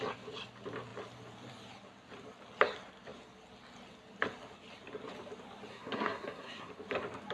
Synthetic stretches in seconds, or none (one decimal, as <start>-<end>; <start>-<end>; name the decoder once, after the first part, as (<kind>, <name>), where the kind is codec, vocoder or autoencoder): 5.7-6.7 (codec, SNAC)